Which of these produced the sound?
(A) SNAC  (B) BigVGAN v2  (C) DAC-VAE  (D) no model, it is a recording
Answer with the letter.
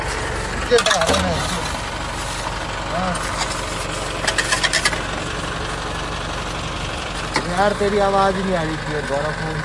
D